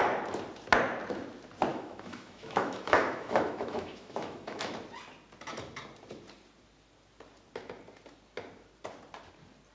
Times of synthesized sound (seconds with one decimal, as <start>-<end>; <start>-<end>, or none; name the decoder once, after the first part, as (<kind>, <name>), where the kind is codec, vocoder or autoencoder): 1.7-4.7 (autoencoder, DAC-VAE)